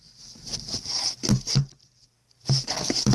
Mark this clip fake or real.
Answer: real